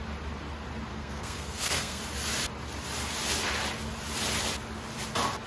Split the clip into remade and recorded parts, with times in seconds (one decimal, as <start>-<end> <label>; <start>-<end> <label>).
0.0-0.9 recorded; 0.9-2.0 remade; 2.0-5.5 recorded